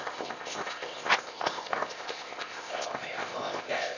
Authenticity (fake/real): fake